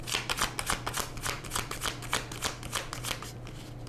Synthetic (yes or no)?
no